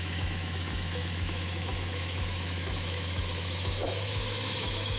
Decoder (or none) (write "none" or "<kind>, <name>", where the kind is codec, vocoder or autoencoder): autoencoder, DAC-VAE